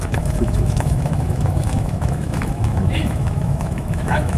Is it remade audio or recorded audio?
remade